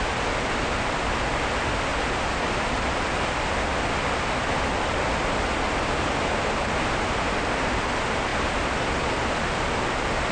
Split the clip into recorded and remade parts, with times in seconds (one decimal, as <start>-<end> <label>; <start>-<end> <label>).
0.0-10.3 recorded